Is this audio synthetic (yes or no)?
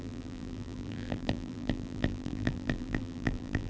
yes